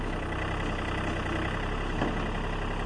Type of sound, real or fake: real